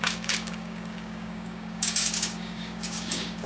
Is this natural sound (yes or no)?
no